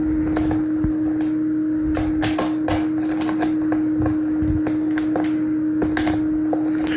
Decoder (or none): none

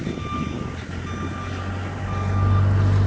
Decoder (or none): none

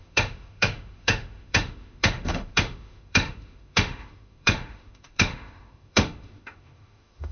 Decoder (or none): autoencoder, DAC-VAE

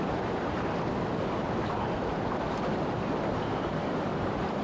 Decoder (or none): none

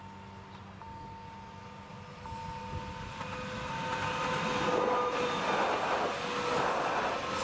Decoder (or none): none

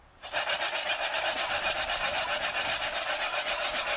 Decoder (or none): none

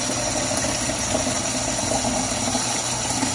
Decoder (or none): none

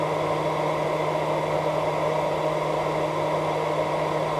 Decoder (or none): none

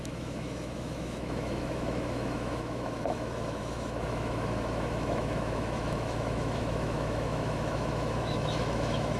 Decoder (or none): autoencoder, DAC-VAE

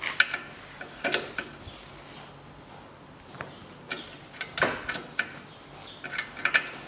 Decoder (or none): none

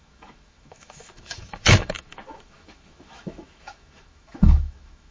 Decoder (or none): autoencoder, DAC-VAE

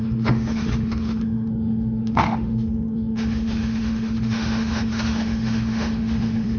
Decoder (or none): autoencoder, DAC-VAE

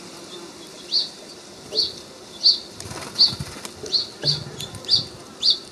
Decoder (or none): none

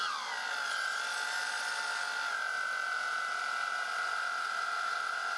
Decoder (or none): none